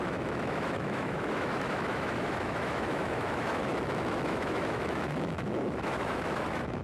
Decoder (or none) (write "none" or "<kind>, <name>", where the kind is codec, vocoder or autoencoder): autoencoder, DAC-VAE